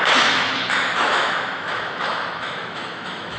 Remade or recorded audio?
remade